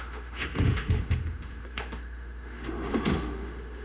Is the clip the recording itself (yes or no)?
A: no